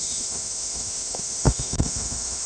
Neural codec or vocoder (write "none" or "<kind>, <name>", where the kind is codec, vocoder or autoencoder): autoencoder, DAC-VAE